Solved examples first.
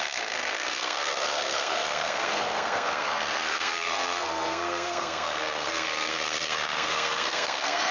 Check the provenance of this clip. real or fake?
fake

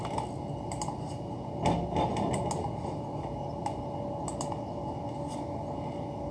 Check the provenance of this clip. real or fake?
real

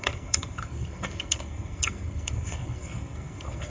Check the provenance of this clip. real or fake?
fake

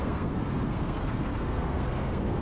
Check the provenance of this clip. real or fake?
fake